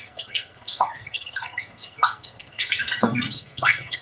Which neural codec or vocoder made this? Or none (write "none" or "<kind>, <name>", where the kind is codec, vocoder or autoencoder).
codec, SNAC